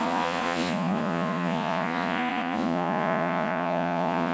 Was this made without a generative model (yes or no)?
no